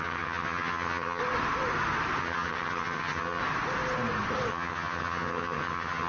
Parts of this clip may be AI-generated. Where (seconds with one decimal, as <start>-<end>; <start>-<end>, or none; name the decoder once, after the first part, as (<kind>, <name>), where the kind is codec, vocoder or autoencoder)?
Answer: 0.0-1.2 (vocoder, HiFi-GAN); 2.2-3.4; 4.5-6.1